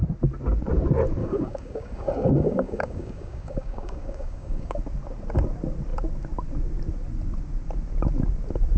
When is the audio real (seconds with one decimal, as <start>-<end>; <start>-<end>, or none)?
0.0-1.2; 4.8-8.8